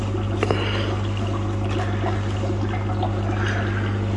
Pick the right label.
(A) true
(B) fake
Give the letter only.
A